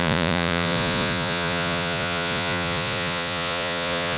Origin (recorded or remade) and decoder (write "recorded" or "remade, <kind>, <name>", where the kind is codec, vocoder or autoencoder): remade, vocoder, Vocos